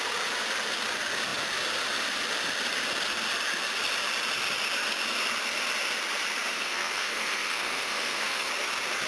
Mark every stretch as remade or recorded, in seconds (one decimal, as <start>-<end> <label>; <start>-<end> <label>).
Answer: 0.0-6.5 recorded; 6.5-8.5 remade; 8.5-9.1 recorded